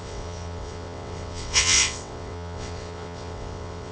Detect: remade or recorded remade